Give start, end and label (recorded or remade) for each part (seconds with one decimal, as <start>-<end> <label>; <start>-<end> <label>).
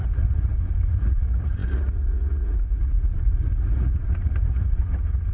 0.0-5.3 remade